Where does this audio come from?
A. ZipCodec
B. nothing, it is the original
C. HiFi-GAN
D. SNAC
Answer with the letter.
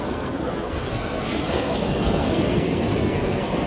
D